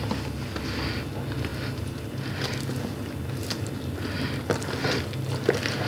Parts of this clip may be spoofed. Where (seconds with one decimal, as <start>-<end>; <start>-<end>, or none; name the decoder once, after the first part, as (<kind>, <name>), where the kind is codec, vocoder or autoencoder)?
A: 1.5-5.0 (vocoder, BigVGAN v2)